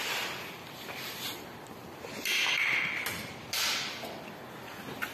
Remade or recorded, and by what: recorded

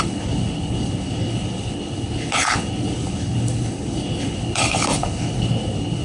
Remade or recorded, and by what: remade, codec, HILCodec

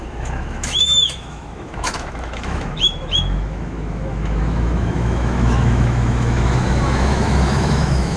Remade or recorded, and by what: remade, autoencoder, DAC-VAE